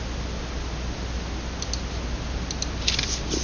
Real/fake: real